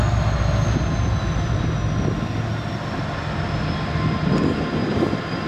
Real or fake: real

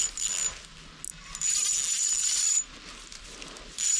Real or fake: real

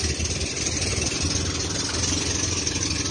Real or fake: real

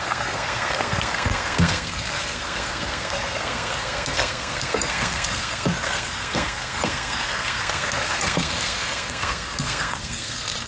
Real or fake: fake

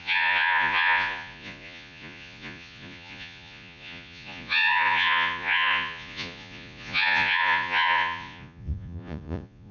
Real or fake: fake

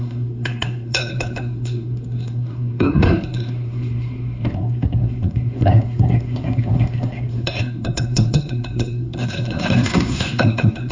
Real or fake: fake